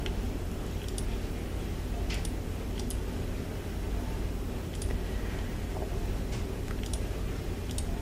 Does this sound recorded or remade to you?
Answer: recorded